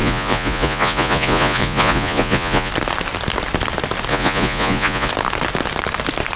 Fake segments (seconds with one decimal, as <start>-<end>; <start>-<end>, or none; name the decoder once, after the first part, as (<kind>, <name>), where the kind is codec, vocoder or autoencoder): 0.0-2.7 (vocoder, Vocos); 4.1-5.1

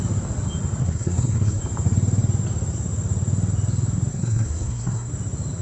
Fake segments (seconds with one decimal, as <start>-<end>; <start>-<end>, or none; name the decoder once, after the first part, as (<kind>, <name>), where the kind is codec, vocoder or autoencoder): 0.8-1.6 (codec, SNAC); 4.1-5.1

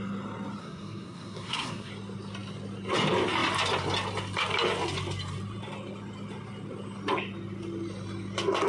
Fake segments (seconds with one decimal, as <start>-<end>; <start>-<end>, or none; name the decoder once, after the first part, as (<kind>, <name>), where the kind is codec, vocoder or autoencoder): 0.6-1.9 (codec, SNAC)

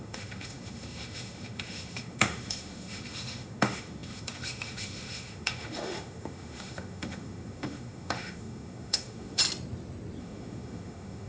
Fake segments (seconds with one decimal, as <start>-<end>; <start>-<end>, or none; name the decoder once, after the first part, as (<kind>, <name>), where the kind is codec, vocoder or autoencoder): 0.0-9.4 (autoencoder, DAC-VAE); 10.2-11.3

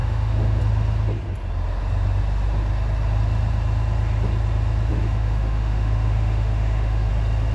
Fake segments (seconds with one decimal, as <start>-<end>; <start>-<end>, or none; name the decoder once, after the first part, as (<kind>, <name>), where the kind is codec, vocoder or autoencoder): 0.0-0.6 (autoencoder, DAC-VAE); 4.9-7.1

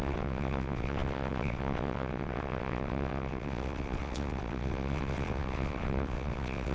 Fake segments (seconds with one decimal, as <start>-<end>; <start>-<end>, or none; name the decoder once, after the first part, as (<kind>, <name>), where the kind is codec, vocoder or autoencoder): 0.0-6.7 (vocoder, WaveNeXt)